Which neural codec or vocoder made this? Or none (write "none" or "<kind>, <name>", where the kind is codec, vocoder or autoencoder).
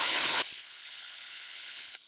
codec, HILCodec